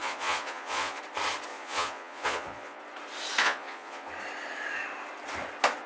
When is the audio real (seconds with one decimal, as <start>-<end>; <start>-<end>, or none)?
1.0-1.5; 2.8-3.4; 4.1-5.9